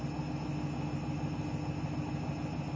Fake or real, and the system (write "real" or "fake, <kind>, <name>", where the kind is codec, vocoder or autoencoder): real